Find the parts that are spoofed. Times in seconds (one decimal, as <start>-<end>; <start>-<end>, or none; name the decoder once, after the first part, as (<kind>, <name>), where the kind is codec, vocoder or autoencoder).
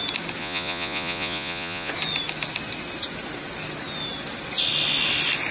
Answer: 0.4-1.9 (vocoder, Vocos)